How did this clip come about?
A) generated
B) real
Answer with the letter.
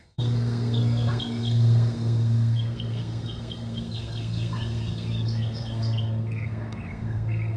A